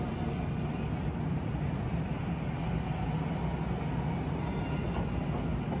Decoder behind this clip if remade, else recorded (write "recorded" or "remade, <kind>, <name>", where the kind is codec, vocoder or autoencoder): recorded